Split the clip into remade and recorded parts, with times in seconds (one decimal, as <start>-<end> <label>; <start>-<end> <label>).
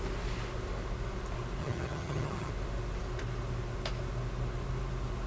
0.0-1.6 recorded; 1.6-2.5 remade; 2.5-5.3 recorded